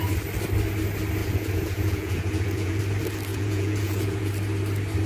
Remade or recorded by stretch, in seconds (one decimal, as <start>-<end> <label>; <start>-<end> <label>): 0.0-1.2 recorded; 1.2-2.8 remade; 2.8-3.3 recorded; 3.3-4.3 remade; 4.3-5.1 recorded